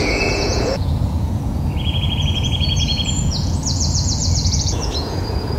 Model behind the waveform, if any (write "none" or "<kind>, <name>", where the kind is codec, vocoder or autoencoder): vocoder, Vocos